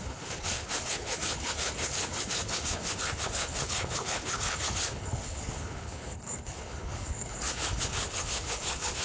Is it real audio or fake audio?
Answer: fake